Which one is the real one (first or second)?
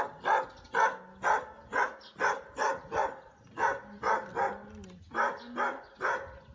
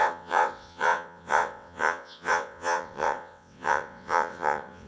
first